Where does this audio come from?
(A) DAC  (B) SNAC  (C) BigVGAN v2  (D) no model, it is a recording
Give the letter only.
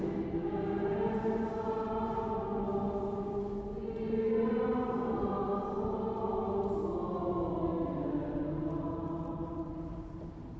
D